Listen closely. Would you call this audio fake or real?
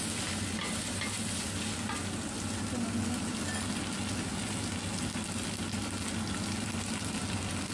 real